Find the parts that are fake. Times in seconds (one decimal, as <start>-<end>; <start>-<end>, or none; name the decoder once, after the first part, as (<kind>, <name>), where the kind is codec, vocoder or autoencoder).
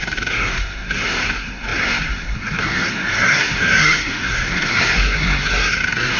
0.0-6.2 (codec, SNAC)